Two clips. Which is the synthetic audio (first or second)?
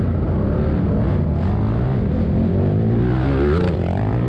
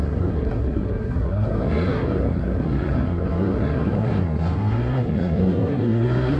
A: second